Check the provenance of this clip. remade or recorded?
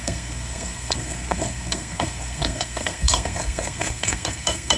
remade